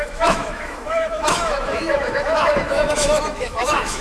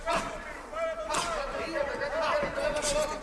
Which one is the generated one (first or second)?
first